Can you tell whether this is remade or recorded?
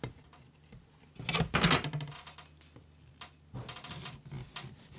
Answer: recorded